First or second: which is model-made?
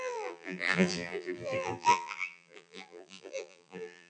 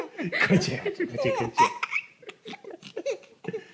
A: first